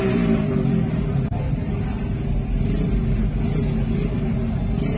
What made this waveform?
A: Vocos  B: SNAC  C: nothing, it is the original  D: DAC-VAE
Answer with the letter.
C